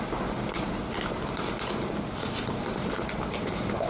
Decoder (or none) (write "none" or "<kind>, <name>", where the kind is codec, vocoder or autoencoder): none